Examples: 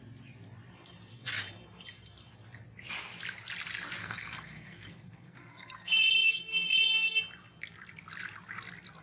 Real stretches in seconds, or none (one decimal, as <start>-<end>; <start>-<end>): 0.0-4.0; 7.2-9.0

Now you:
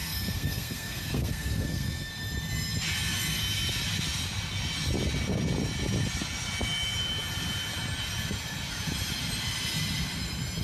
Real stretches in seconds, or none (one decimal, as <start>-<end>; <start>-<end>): 2.1-10.6

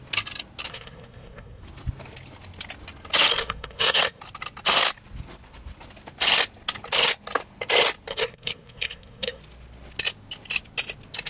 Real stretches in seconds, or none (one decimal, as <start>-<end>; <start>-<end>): 0.0-0.7; 1.6-3.3; 4.2-8.1; 9.4-11.3

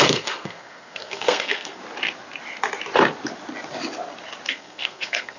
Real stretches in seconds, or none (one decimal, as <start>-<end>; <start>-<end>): 1.8-4.5